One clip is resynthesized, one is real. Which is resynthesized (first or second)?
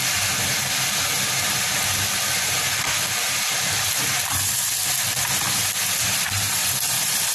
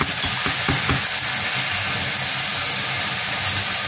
first